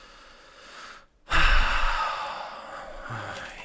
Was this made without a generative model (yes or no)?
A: yes